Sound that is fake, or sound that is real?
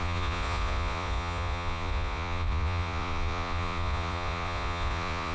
fake